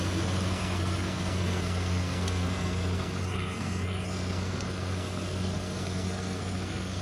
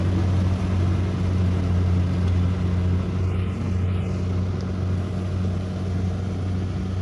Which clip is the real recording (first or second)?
second